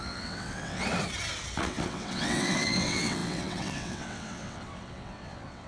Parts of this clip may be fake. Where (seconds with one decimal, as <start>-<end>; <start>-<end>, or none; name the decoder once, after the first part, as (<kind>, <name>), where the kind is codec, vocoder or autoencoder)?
0.0-0.8 (vocoder, WaveNeXt); 1.6-5.7